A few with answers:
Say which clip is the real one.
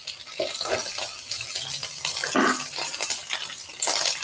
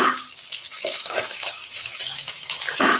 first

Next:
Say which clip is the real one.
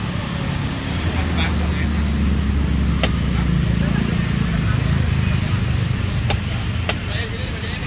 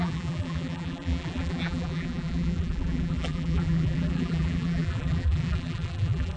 first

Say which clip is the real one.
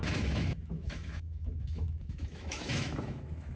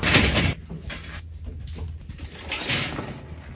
second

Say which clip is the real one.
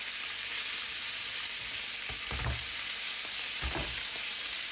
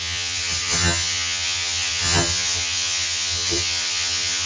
first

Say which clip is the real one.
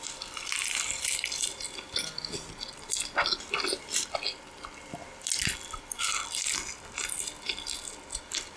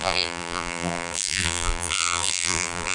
first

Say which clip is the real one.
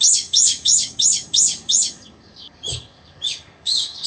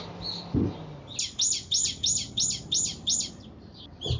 second